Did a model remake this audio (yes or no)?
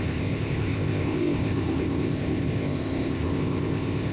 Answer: yes